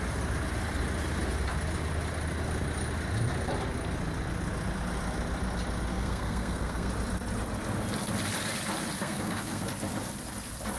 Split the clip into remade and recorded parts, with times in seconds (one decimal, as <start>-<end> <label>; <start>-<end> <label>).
0.0-5.9 recorded; 5.9-6.9 remade; 6.9-9.0 recorded; 9.0-9.7 remade; 9.7-10.8 recorded